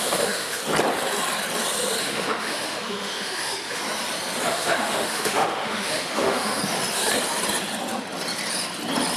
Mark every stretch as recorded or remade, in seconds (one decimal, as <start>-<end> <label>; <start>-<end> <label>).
0.0-0.6 remade; 0.6-2.0 recorded; 2.0-3.8 remade; 3.8-4.5 recorded; 4.5-6.6 remade; 6.6-9.2 recorded